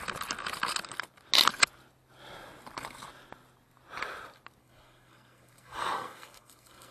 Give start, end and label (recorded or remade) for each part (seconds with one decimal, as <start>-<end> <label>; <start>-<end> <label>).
0.0-4.6 recorded; 4.6-6.9 remade